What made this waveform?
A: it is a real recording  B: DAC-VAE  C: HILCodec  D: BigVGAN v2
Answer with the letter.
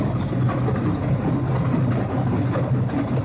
A